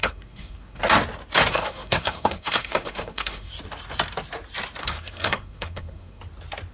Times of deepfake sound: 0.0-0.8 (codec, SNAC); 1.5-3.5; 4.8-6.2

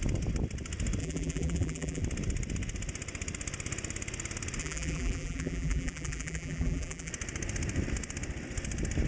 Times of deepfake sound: 1.0-2.0 (vocoder, BigVGAN v2); 4.6-7.1

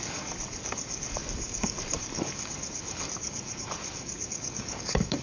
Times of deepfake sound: 0.0-5.2 (codec, DAC)